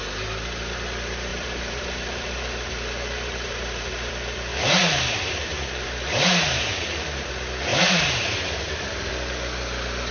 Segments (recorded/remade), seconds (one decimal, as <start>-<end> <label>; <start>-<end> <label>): 0.0-1.3 recorded; 1.3-4.1 remade; 4.1-4.5 recorded; 4.5-7.3 remade; 7.3-7.7 recorded; 7.7-9.1 remade; 9.1-10.1 recorded